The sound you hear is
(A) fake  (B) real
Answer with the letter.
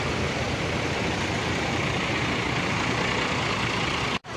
B